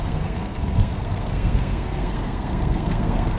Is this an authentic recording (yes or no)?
no